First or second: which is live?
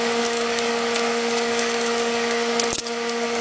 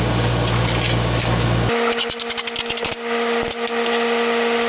second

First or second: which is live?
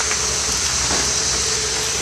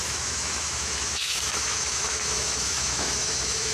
first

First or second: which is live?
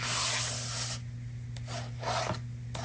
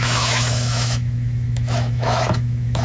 first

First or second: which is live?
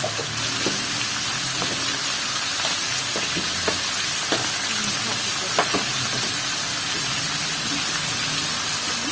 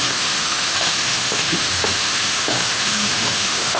first